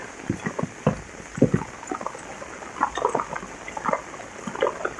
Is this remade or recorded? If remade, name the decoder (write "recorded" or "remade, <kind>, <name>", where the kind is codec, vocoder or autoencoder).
recorded